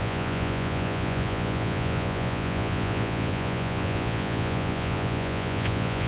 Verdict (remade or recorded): remade